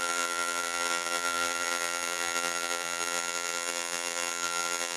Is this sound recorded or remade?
remade